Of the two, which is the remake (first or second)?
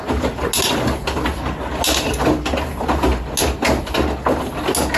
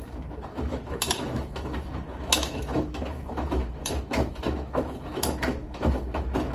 second